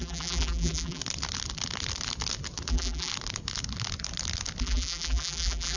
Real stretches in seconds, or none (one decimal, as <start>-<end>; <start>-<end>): 1.0-2.7; 3.1-4.6